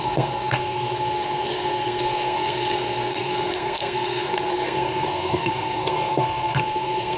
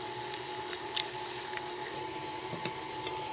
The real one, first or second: second